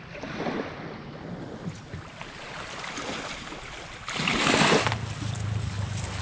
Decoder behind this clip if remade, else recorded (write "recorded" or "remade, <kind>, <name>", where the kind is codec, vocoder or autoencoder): recorded